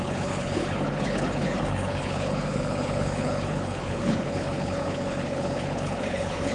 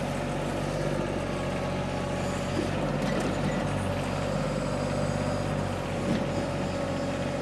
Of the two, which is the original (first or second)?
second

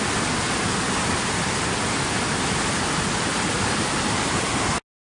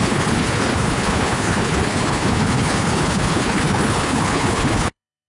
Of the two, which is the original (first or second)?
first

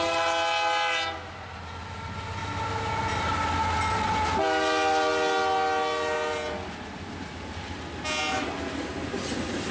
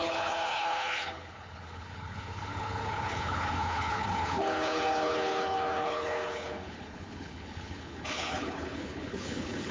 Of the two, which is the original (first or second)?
first